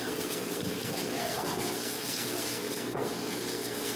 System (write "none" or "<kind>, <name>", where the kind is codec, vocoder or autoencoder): codec, SNAC